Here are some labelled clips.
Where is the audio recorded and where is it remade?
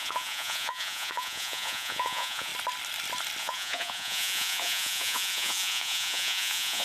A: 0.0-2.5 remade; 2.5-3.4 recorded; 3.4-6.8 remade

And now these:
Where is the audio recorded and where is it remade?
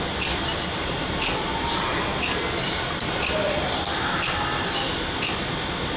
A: 0.0-6.0 recorded